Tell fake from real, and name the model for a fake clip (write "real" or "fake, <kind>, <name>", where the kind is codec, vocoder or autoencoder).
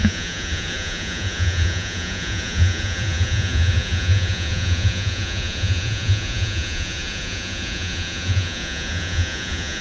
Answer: fake, vocoder, Vocos